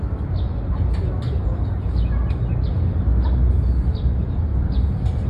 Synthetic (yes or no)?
no